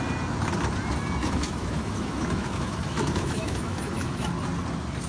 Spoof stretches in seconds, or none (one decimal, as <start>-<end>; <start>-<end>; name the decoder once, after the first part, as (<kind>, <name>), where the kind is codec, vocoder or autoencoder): 1.2-4.3 (autoencoder, DAC-VAE)